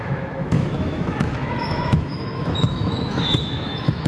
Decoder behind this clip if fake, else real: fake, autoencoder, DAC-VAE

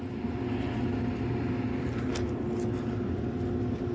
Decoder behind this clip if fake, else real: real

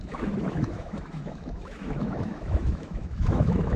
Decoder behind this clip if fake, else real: fake, autoencoder, DAC-VAE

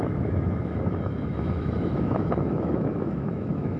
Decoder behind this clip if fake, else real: fake, autoencoder, DAC-VAE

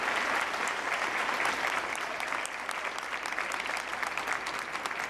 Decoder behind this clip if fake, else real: real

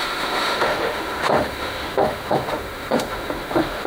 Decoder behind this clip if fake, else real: fake, autoencoder, DAC-VAE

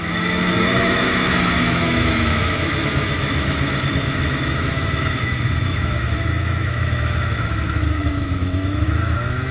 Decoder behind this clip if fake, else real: fake, autoencoder, DAC-VAE